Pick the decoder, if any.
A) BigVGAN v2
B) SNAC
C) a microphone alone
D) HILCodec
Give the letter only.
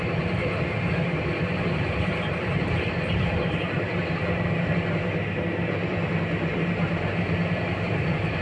A